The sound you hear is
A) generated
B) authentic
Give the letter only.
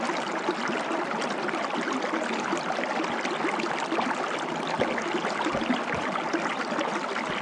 B